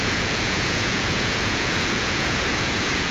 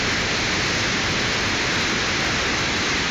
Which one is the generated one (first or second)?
first